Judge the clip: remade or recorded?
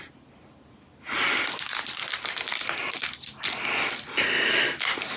recorded